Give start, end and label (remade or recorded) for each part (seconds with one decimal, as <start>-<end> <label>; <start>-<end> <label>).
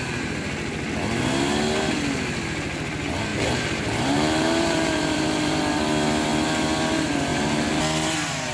0.0-3.3 recorded; 3.3-5.6 remade; 5.6-7.3 recorded; 7.3-7.8 remade; 7.8-8.5 recorded